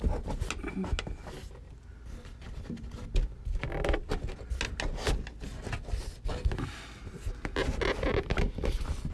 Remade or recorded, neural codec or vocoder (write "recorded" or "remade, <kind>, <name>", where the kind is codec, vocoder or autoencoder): recorded